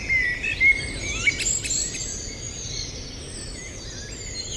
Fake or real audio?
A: real